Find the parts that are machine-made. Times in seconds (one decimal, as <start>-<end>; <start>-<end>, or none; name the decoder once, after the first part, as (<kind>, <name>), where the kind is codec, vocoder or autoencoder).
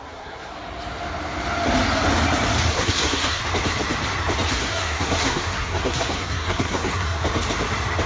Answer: 0.0-0.5 (codec, SNAC); 2.7-3.4; 4.5-7.2